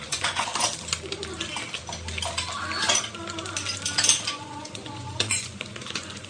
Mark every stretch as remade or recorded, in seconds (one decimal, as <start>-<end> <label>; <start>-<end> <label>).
0.0-0.5 remade; 0.5-4.3 recorded; 4.3-6.3 remade